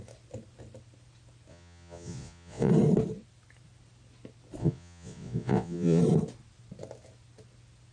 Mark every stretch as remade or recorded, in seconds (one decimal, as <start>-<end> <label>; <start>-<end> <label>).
0.0-1.5 recorded; 1.5-2.7 remade; 2.7-4.6 recorded; 4.6-6.0 remade; 6.0-7.9 recorded